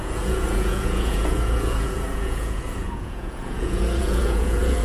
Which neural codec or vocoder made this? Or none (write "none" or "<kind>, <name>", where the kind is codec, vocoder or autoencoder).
vocoder, Vocos